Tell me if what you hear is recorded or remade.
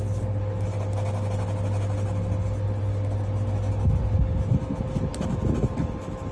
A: recorded